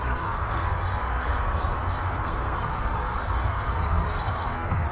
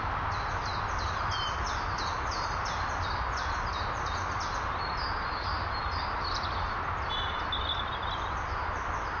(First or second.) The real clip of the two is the second